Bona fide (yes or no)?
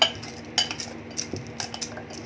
yes